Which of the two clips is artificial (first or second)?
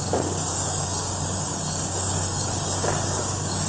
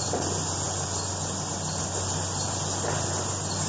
first